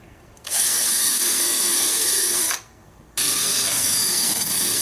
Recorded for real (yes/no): no